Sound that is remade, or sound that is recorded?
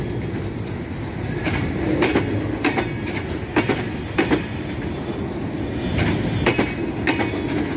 recorded